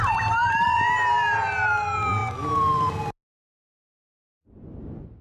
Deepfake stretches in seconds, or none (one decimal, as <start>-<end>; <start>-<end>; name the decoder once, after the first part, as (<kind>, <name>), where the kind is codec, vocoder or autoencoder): 0.0-2.2 (vocoder, BigVGAN v2); 3.8-5.2